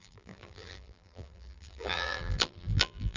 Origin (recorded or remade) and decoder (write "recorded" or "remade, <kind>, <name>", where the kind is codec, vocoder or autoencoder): remade, vocoder, BigVGAN v2